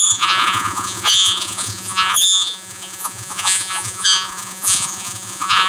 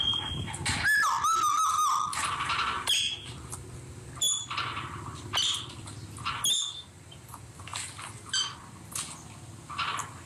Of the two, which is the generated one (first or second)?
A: first